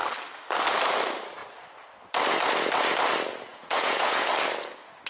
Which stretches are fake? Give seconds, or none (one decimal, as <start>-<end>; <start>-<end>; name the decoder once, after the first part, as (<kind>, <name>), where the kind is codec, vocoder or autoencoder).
3.5-4.3 (vocoder, Vocos)